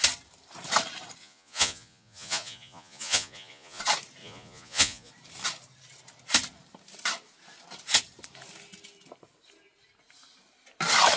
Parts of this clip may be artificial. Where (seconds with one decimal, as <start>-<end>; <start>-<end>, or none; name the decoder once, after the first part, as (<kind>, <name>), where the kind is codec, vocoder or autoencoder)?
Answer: 1.2-3.8 (vocoder, Vocos); 4.2-5.1